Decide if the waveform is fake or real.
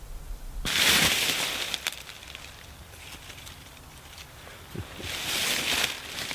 fake